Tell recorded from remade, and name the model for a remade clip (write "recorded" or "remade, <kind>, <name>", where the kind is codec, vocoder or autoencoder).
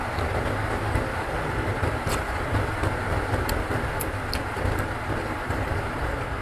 recorded